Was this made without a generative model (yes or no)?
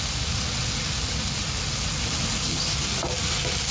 yes